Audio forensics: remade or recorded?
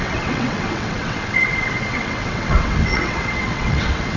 remade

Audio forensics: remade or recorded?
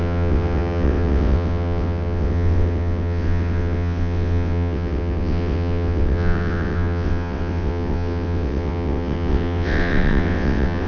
remade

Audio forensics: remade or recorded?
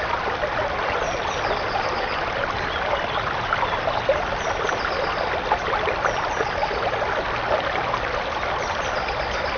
recorded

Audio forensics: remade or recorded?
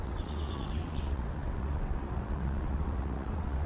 remade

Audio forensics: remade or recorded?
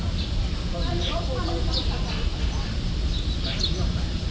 recorded